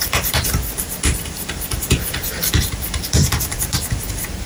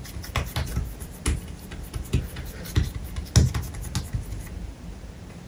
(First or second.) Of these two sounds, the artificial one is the first